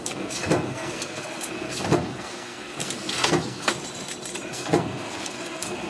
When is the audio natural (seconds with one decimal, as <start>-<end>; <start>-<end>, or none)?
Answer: 3.7-4.5